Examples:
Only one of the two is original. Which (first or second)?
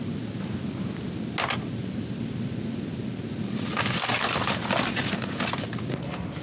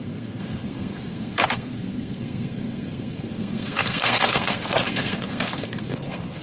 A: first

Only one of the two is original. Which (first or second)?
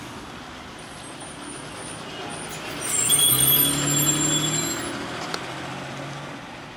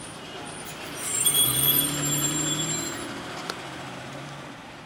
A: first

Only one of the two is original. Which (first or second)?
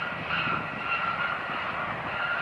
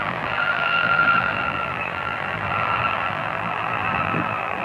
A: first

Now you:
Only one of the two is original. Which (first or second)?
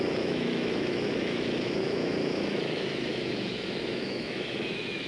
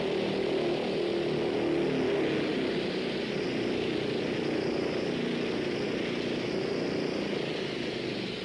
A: second